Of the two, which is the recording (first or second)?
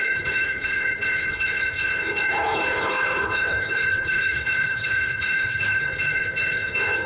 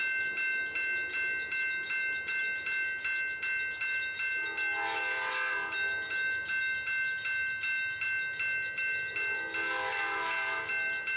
second